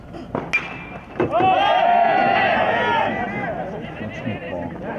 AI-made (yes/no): no